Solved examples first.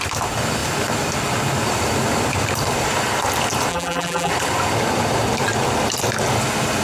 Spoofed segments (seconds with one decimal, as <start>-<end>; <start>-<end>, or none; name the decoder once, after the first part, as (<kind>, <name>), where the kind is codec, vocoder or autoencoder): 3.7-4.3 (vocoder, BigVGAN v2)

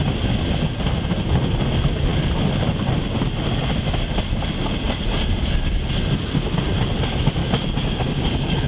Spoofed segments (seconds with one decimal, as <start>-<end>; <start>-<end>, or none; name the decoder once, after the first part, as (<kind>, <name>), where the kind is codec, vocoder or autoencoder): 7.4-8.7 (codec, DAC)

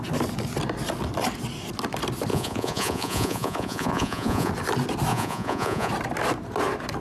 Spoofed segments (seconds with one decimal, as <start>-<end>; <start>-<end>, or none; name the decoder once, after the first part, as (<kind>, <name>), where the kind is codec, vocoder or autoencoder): 2.3-4.5 (vocoder, Vocos); 5.1-5.9

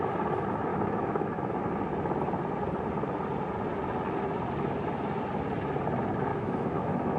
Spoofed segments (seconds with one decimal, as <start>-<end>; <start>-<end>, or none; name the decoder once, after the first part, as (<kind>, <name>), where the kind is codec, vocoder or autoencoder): 0.7-1.6 (autoencoder, DAC-VAE); 6.3-7.2

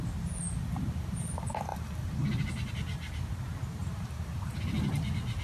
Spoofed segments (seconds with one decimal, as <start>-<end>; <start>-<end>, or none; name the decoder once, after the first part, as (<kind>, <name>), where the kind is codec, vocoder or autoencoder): 1.7-2.7 (vocoder, BigVGAN v2); 3.8-4.5

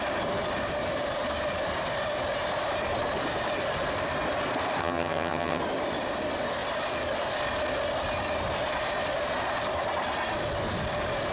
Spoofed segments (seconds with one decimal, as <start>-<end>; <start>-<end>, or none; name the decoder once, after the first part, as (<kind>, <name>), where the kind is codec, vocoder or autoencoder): 4.8-5.6 (vocoder, HiFi-GAN)

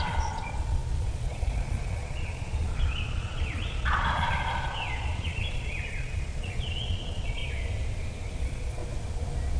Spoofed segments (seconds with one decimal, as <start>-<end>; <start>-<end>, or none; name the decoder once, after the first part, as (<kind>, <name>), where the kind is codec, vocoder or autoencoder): 0.0-7.4 (vocoder, Vocos); 8.4-8.8

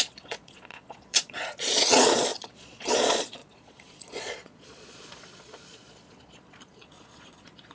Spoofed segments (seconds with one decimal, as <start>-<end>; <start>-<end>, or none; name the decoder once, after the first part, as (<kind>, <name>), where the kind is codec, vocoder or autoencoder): 0.0-7.7 (vocoder, Vocos)